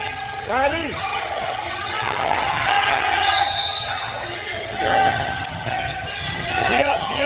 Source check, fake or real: fake